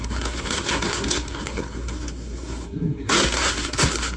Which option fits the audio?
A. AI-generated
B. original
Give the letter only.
A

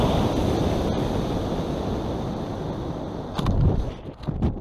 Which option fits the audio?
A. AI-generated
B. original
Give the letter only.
B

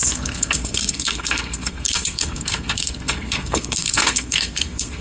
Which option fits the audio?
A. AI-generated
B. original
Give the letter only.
A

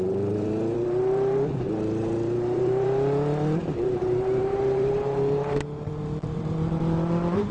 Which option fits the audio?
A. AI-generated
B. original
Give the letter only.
A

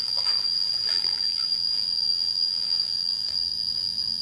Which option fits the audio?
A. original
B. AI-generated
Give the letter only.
B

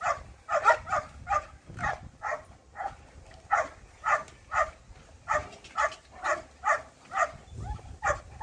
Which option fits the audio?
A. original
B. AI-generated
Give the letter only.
A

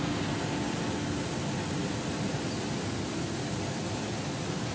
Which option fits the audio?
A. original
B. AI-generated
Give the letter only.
A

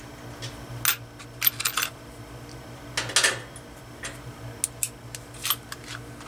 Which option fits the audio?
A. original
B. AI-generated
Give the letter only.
A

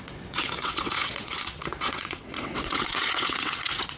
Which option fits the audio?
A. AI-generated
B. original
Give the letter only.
A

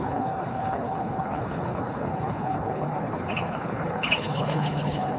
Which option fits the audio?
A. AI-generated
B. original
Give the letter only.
A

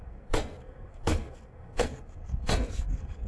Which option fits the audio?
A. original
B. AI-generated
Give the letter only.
B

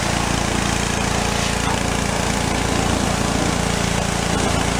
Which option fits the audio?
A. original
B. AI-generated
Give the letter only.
A